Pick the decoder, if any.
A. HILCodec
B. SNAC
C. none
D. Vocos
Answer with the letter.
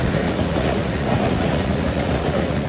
D